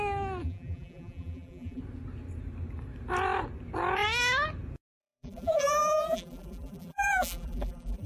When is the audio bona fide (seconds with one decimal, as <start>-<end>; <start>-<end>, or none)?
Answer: 0.0-0.4; 1.8-5.0